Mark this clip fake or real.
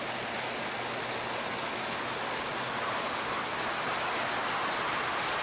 real